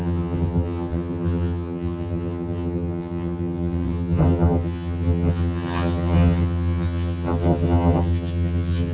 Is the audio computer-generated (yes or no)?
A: yes